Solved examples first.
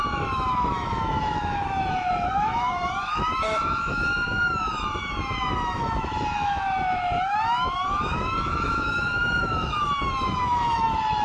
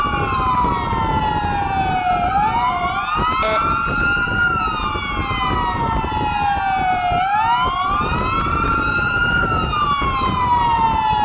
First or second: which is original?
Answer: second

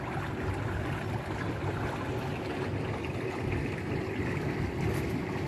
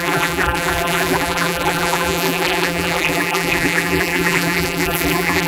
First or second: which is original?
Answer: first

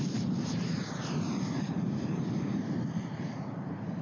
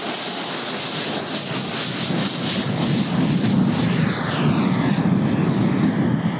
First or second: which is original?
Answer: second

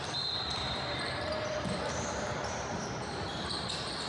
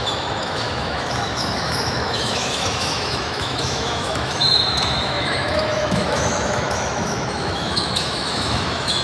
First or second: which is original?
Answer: first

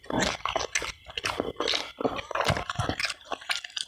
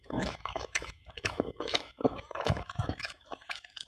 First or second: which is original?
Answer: first